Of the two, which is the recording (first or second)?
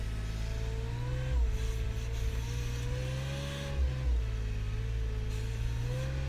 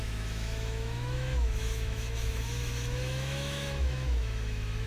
first